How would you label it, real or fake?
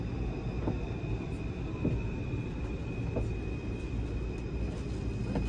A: real